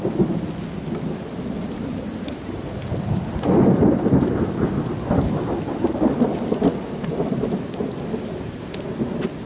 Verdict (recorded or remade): recorded